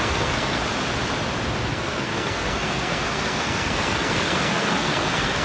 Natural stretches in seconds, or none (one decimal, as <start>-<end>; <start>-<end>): 0.6-1.7